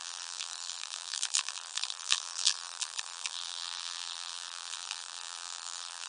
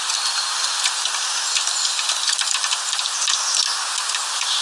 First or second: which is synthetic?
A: first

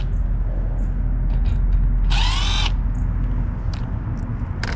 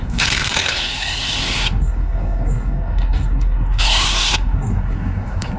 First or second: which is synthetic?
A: second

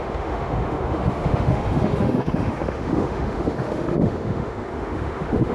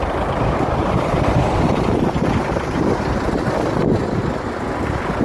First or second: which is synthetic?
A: first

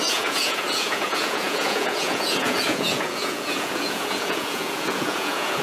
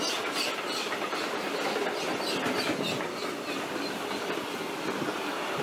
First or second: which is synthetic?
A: first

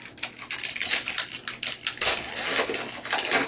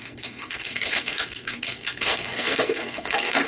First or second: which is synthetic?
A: second